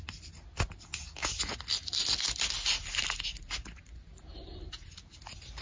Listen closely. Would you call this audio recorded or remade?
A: recorded